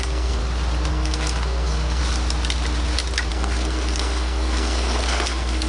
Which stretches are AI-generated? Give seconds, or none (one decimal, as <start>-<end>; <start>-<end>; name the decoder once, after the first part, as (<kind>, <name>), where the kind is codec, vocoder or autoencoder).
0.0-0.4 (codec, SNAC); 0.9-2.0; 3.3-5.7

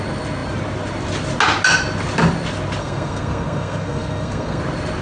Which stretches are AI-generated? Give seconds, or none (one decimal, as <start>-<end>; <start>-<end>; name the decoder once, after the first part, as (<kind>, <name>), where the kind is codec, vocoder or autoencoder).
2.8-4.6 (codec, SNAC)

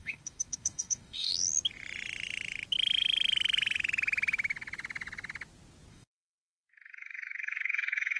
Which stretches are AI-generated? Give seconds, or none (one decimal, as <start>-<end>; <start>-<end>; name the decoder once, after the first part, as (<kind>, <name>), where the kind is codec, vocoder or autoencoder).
0.0-1.3 (codec, DAC); 5.9-8.2

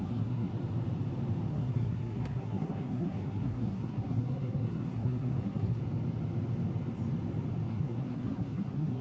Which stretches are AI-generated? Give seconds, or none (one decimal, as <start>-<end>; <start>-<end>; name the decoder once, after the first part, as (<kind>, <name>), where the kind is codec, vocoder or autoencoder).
0.0-0.5 (codec, SNAC); 1.5-5.8; 7.7-9.0

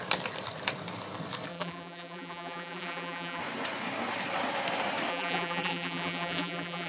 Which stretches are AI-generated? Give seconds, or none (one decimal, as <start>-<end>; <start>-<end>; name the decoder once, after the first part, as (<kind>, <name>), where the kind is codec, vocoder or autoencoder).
1.5-3.4 (vocoder, BigVGAN v2); 5.1-6.9